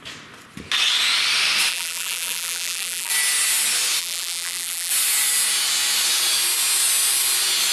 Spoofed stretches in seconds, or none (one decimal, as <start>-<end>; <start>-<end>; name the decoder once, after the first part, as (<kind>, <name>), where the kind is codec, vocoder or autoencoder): 1.7-3.1 (vocoder, BigVGAN v2); 4.0-4.9